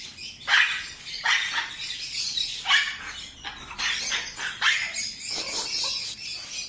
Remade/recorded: recorded